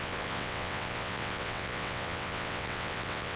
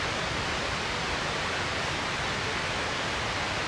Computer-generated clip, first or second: first